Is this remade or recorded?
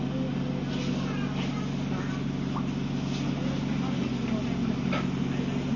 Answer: recorded